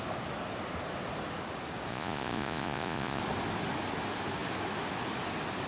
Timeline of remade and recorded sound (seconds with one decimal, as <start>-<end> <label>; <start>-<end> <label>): 0.0-1.9 recorded; 1.9-3.2 remade; 3.2-5.7 recorded

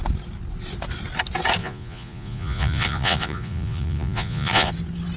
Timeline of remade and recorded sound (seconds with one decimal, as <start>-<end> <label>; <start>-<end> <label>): 0.0-1.6 recorded; 1.6-4.7 remade; 4.7-5.2 recorded

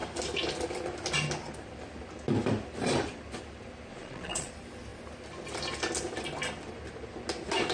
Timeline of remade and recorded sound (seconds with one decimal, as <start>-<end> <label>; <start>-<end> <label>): 0.0-3.9 recorded; 3.9-4.5 remade; 4.5-7.7 recorded

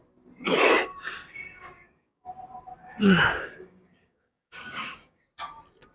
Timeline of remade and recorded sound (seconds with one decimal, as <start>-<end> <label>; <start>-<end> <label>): 0.0-0.9 recorded; 0.9-2.3 remade; 2.3-2.8 recorded; 2.8-5.2 remade; 5.2-5.9 recorded

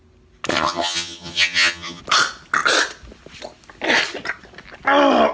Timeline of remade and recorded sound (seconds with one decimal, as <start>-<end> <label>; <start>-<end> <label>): 0.0-0.5 recorded; 0.5-2.0 remade; 2.0-5.3 recorded